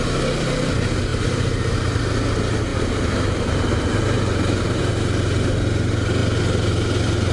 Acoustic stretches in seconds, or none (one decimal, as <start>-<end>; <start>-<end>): 0.0-1.1; 2.0-2.7; 4.8-7.3